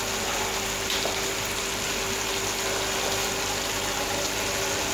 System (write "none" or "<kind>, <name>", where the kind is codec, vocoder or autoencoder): none